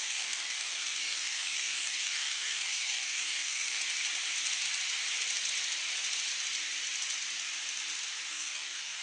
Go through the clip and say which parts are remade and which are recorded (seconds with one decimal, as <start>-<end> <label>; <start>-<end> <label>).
0.0-3.8 remade; 3.8-8.3 recorded; 8.3-9.0 remade